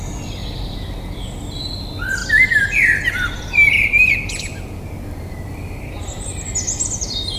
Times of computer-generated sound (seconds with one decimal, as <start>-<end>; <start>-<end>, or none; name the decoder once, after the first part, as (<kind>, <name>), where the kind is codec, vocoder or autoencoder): none